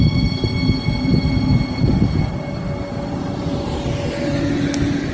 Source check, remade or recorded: recorded